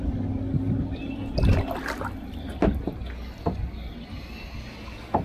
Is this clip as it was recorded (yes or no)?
yes